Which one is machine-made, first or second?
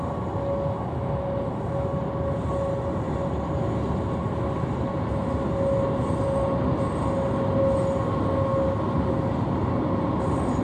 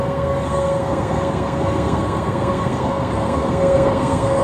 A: second